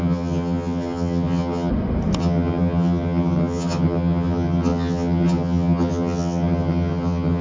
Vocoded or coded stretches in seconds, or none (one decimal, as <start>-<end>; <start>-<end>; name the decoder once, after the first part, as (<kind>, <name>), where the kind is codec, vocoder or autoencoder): 0.0-1.7 (vocoder, HiFi-GAN); 2.2-7.4

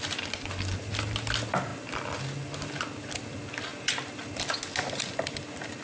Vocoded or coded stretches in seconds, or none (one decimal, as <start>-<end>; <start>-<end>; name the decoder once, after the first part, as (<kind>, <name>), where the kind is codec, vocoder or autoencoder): none

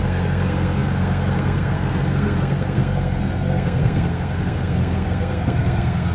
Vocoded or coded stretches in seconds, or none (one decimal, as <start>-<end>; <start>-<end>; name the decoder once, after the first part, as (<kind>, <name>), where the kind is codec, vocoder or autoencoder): 0.0-6.1 (codec, SNAC)

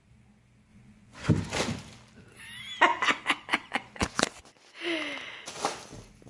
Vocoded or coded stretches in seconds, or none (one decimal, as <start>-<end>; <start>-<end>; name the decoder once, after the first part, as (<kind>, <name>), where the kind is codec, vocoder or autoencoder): 0.7-1.3 (vocoder, Vocos); 2.9-4.5

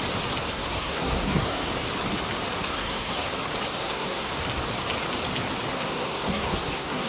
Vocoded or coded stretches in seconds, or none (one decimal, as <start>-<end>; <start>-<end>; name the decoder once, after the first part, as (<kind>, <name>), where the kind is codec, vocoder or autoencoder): 0.5-1.7 (codec, SNAC); 2.6-3.3; 3.8-4.3; 5.7-7.1